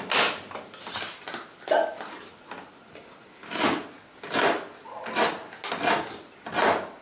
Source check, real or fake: real